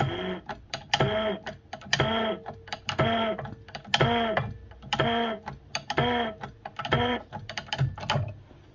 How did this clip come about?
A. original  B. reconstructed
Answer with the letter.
A